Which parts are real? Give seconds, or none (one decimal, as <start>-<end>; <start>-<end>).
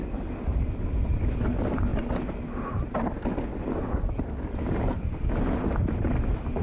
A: 0.0-6.6